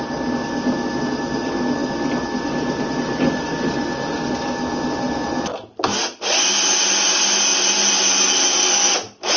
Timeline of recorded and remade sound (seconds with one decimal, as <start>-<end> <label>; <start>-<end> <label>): 0.0-9.4 recorded